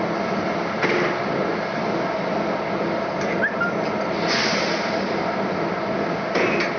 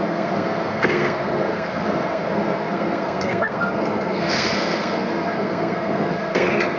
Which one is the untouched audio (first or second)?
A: first